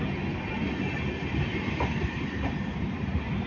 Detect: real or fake real